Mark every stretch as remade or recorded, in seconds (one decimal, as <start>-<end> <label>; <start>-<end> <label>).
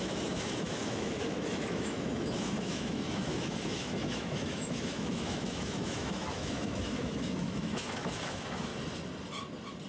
0.0-8.7 remade; 8.7-9.9 recorded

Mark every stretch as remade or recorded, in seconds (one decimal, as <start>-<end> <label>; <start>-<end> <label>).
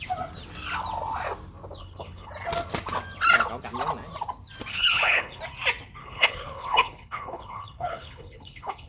0.0-1.8 recorded; 1.8-2.3 remade; 2.3-4.7 recorded; 4.7-5.4 remade; 5.4-6.0 recorded; 6.0-8.9 remade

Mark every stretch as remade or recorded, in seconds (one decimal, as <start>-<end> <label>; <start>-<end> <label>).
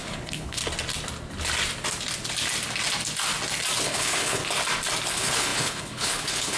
0.0-0.6 remade; 0.6-3.8 recorded; 3.8-4.4 remade; 4.4-5.1 recorded; 5.1-6.6 remade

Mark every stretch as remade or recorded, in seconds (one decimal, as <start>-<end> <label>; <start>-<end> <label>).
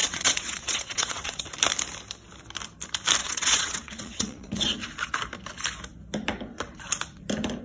0.0-1.4 remade; 1.4-3.2 recorded; 3.2-4.6 remade; 4.6-7.6 recorded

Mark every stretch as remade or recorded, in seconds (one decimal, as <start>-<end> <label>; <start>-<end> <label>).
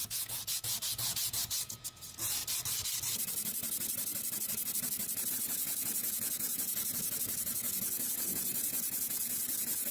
0.0-2.4 remade; 2.4-5.3 recorded; 5.3-9.9 remade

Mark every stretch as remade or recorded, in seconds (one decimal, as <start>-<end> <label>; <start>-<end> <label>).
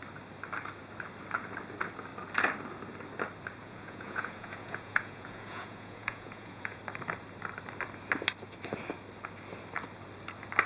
0.0-3.6 recorded; 3.6-6.8 remade; 6.8-10.7 recorded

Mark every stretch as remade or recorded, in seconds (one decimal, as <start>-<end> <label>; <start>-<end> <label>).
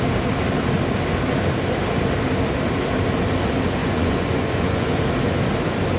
0.0-3.8 recorded; 3.8-5.0 remade; 5.0-6.0 recorded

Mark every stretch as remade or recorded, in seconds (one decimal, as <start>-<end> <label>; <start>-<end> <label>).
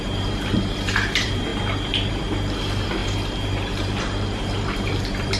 0.0-1.5 remade; 1.5-2.1 recorded; 2.1-5.4 remade